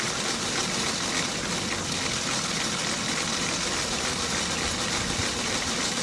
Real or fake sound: real